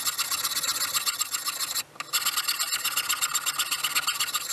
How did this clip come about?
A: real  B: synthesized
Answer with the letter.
A